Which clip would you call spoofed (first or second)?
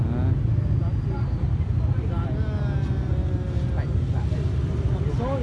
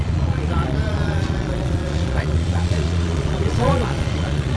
second